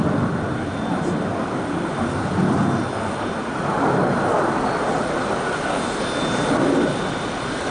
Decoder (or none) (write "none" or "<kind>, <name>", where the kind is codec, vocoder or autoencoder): none